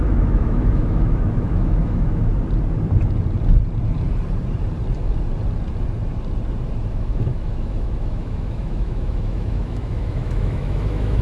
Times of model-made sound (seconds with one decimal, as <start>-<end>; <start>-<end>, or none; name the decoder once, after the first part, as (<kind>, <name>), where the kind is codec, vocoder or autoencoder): 0.0-2.3 (autoencoder, DAC-VAE); 6.9-11.2